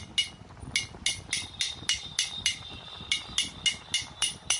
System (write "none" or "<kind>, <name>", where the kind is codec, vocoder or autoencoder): none